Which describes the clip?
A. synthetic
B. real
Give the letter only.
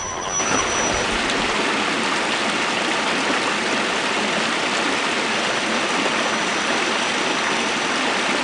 B